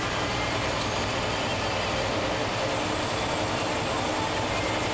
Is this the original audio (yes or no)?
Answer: yes